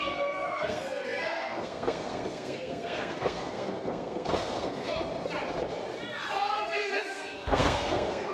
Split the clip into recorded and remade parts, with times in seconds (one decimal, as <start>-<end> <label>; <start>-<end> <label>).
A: 0.0-4.9 remade; 4.9-6.4 recorded; 6.4-8.3 remade